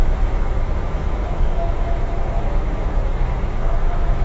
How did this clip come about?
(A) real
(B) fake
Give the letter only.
B